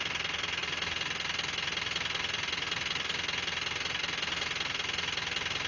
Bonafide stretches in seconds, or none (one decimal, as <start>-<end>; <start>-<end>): 0.0-5.7